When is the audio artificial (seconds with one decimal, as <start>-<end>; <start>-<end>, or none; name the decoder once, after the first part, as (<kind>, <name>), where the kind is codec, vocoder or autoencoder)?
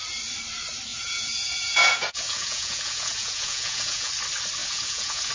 0.9-4.1 (vocoder, Vocos); 4.6-5.3